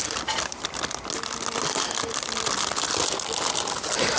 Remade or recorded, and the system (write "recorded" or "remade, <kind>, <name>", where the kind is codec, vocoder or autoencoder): recorded